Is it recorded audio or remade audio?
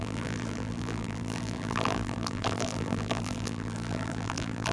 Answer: remade